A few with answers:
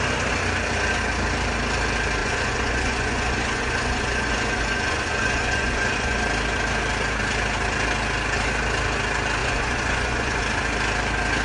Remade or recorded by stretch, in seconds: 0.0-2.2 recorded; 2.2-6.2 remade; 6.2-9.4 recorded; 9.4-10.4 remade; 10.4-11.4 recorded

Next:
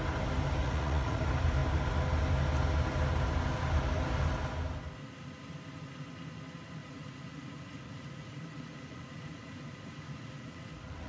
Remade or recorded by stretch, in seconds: 0.0-0.6 recorded; 0.6-1.2 remade; 1.2-6.8 recorded; 6.8-11.1 remade